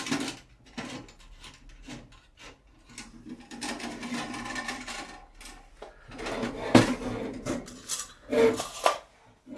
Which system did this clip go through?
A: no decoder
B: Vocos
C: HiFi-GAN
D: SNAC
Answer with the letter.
A